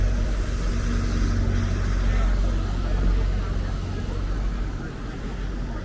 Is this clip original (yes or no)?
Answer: yes